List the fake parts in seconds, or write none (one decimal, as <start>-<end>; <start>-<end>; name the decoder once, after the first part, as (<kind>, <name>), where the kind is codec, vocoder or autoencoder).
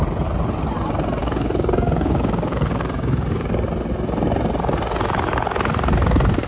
1.2-3.5 (codec, DAC)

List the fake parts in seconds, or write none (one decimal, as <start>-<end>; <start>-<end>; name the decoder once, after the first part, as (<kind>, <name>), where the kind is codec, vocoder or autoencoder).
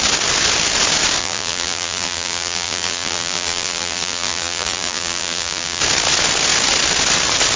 1.2-5.8 (vocoder, BigVGAN v2)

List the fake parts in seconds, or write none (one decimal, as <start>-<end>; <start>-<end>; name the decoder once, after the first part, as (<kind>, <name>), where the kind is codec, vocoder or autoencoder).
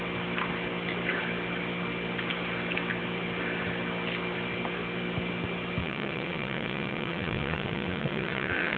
5.8-8.8 (vocoder, WaveNeXt)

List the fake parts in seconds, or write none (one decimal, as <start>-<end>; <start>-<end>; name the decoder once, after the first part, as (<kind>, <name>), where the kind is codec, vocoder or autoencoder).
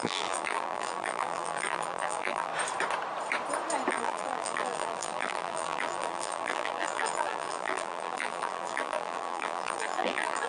0.0-2.5 (vocoder, BigVGAN v2); 3.9-10.5